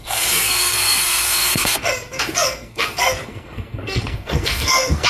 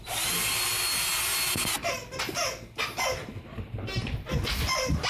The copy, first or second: first